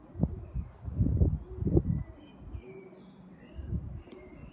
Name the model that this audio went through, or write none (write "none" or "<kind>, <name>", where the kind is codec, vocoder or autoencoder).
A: none